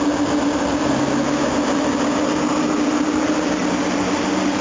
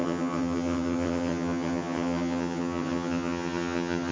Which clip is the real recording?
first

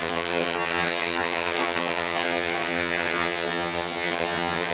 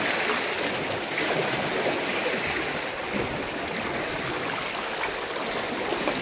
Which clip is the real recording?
second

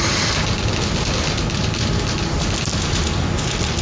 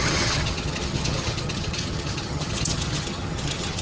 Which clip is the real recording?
first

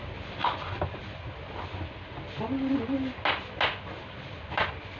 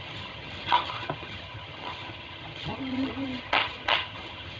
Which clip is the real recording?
first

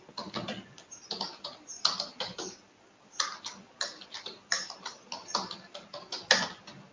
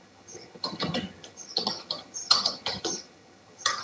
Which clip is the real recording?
first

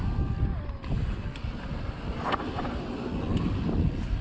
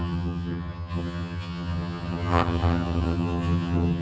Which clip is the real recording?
first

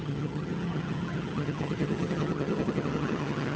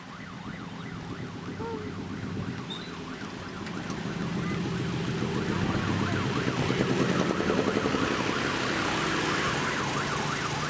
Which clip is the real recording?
second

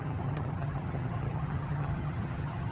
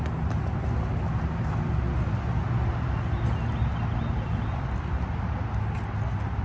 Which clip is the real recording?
second